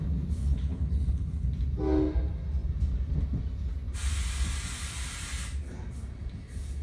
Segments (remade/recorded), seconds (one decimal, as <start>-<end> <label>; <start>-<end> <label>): 0.0-0.4 recorded; 0.4-1.5 remade; 1.5-6.8 recorded